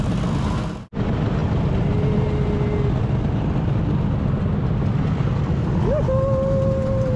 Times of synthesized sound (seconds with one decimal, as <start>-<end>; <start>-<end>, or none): none